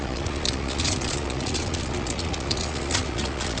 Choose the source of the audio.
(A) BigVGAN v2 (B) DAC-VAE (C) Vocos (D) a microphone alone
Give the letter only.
C